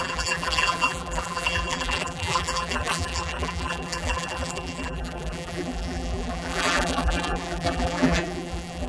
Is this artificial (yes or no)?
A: yes